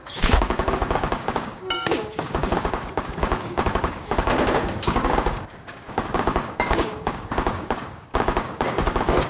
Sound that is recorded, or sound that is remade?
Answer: remade